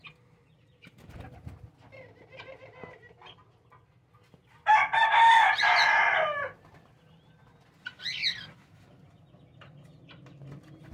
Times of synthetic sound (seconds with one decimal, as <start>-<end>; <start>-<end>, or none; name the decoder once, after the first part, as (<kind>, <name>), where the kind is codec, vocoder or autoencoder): none